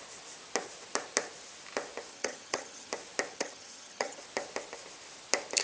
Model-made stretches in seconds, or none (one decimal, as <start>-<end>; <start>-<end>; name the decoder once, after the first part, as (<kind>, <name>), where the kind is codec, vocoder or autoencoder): 2.1-2.9 (vocoder, HiFi-GAN); 3.3-4.2